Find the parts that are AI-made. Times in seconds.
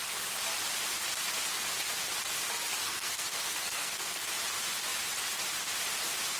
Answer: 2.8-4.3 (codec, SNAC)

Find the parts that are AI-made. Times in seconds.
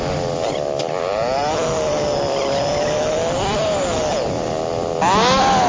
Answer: none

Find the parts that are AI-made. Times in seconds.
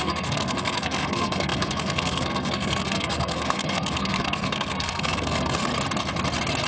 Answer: 0.0-5.7 (codec, SNAC)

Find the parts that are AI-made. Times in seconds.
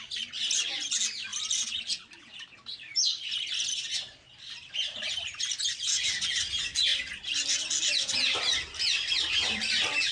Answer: none